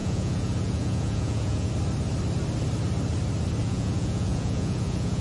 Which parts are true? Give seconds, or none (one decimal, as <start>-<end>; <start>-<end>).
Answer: 1.7-3.6